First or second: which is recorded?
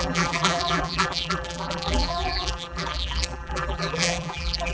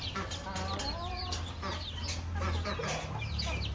second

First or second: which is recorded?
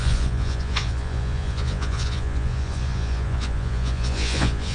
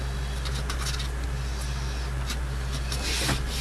second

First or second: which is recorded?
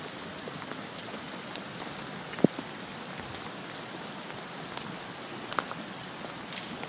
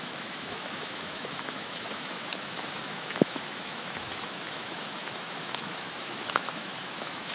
first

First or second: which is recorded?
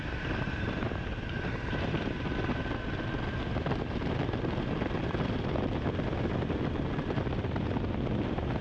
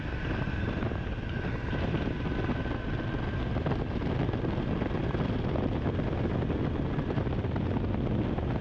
second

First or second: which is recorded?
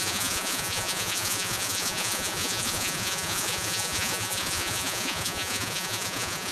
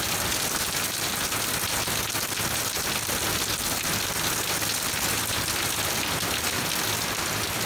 second